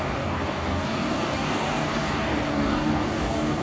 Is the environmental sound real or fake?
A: fake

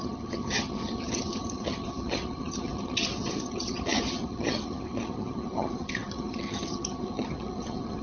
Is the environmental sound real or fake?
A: fake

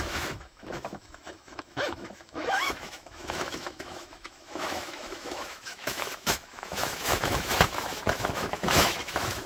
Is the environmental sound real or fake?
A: fake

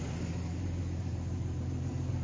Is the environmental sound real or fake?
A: fake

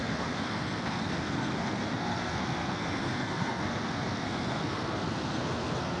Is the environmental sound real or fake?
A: fake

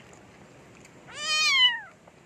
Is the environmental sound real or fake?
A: real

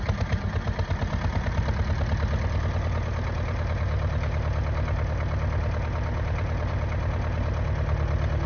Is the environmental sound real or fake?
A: real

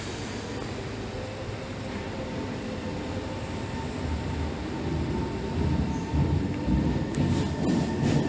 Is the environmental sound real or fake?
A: real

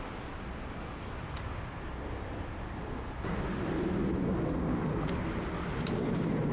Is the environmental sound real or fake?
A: real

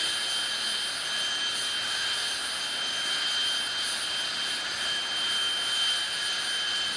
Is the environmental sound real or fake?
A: real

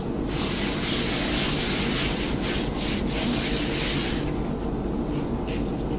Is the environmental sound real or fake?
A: real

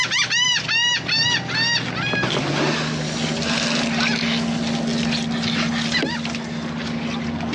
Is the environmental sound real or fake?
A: real